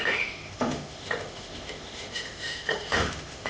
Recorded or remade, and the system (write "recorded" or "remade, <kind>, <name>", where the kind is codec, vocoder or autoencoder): remade, autoencoder, DAC-VAE